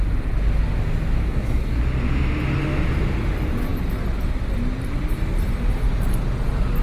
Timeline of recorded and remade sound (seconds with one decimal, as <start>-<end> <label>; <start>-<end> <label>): 0.0-1.2 recorded; 1.2-1.8 remade; 1.8-6.8 recorded